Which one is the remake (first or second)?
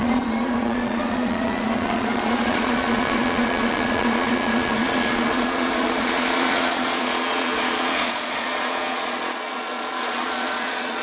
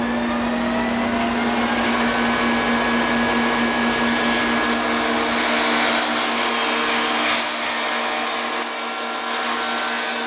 first